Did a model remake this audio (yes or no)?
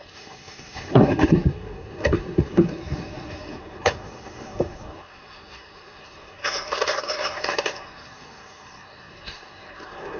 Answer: yes